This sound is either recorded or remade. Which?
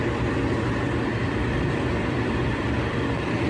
remade